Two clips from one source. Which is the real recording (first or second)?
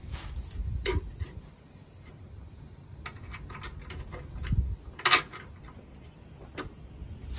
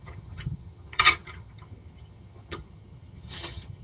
first